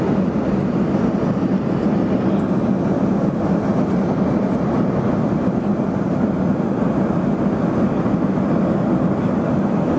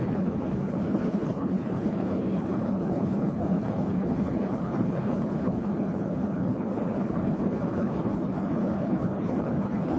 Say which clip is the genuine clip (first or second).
first